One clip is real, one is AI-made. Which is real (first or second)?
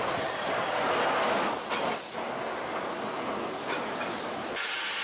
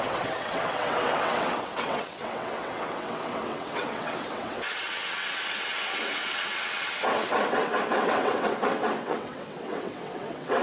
first